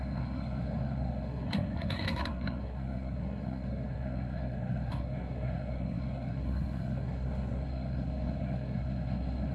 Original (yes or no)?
no